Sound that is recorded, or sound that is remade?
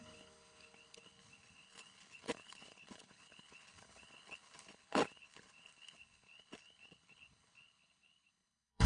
remade